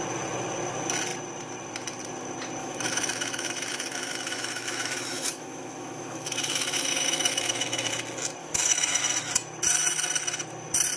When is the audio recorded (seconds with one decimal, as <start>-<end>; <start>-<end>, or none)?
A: 0.0-2.6; 7.9-8.4; 9.0-11.0